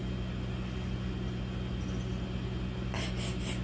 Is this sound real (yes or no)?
yes